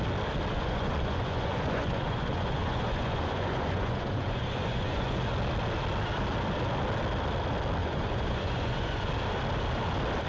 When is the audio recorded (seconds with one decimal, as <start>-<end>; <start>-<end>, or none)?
0.0-0.5; 5.3-7.8; 9.1-10.3